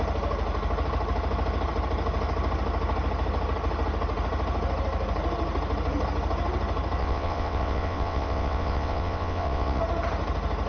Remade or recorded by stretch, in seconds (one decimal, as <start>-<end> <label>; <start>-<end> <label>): 0.0-7.0 recorded; 7.0-9.8 remade; 9.8-10.7 recorded